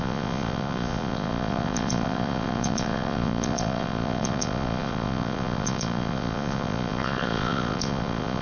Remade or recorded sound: remade